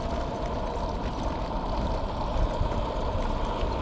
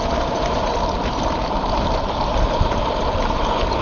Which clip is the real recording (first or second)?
first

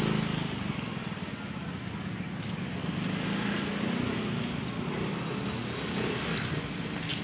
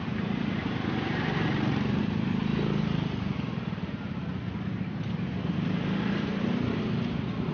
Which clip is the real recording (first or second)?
first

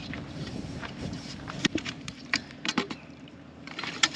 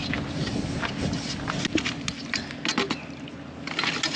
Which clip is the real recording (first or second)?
second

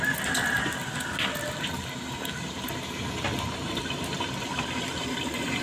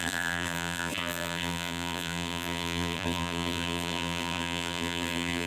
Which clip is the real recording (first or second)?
first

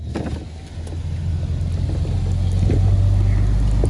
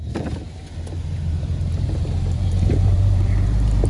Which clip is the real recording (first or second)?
first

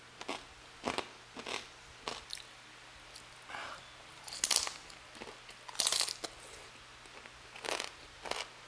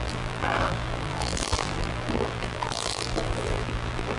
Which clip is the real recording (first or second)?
first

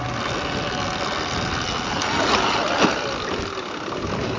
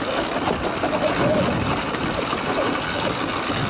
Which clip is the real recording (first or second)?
second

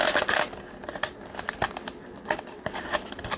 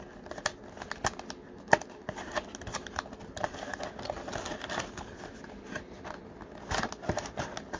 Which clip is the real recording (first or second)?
second